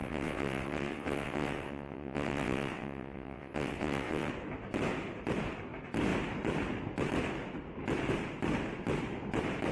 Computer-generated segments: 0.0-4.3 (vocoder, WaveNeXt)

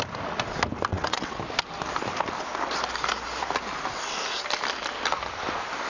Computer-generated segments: 0.9-1.4 (vocoder, WaveNeXt)

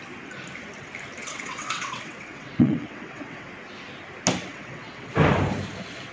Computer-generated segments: 1.2-3.5 (vocoder, WaveNeXt); 4.5-5.1

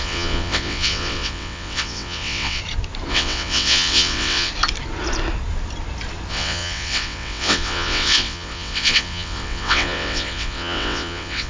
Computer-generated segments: 0.0-2.6 (vocoder, WaveNeXt); 3.1-4.5; 6.3-11.5

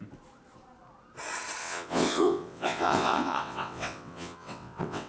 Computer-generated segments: 1.6-5.1 (vocoder, WaveNeXt)

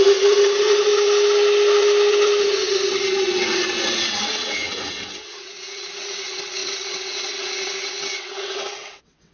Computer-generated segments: 0.0-0.9 (vocoder, WaveNeXt); 2.4-9.3

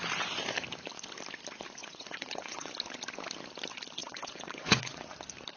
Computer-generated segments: 1.8-2.7 (vocoder, WaveNeXt); 4.0-5.0

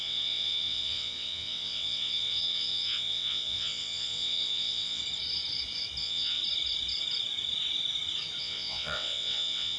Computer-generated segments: 0.0-5.0 (vocoder, WaveNeXt); 6.0-6.4; 8.4-9.8